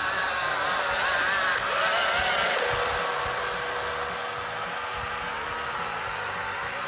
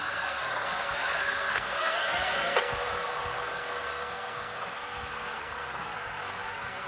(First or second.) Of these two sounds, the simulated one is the second